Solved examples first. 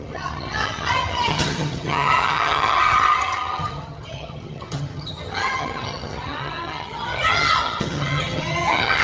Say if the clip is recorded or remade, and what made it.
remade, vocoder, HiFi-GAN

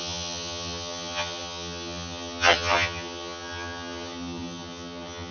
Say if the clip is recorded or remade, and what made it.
remade, vocoder, HiFi-GAN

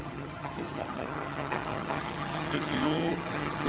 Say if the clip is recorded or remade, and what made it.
remade, vocoder, HiFi-GAN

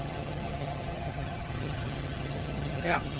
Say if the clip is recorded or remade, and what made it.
remade, vocoder, HiFi-GAN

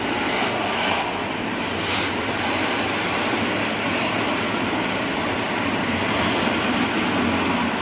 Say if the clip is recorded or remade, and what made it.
recorded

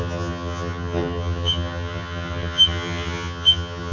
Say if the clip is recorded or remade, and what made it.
remade, vocoder, HiFi-GAN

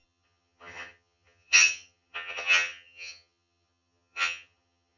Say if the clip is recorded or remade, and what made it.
remade, vocoder, HiFi-GAN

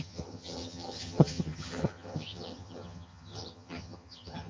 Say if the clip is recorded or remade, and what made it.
remade, vocoder, HiFi-GAN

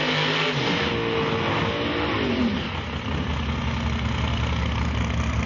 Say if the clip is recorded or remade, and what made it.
recorded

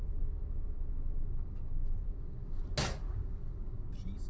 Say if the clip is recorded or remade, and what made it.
recorded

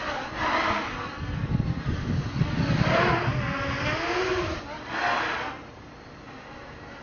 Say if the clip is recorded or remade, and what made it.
recorded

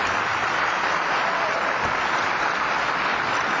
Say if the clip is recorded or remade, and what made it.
recorded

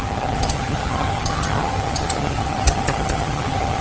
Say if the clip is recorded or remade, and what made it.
remade, vocoder, HiFi-GAN